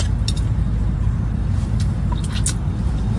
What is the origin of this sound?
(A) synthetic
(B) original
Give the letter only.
B